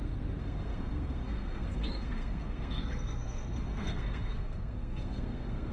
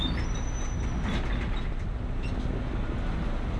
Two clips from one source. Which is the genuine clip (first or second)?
second